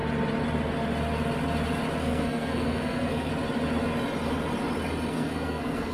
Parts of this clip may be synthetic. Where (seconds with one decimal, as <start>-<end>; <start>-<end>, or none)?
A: 2.0-3.3; 5.1-5.9